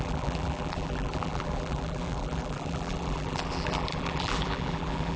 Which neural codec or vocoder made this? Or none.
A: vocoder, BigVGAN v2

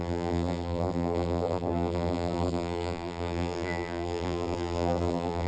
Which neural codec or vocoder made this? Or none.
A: vocoder, BigVGAN v2